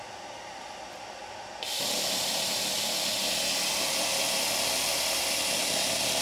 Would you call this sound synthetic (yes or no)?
no